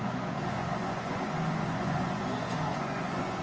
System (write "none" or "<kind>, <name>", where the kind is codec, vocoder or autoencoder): vocoder, Vocos